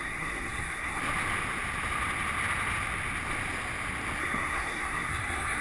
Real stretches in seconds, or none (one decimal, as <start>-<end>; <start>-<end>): 1.0-4.2